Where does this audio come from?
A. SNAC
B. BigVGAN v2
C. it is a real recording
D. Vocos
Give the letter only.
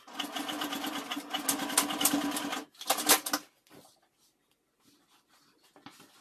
C